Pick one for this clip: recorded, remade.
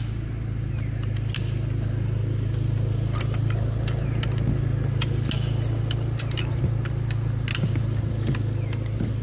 recorded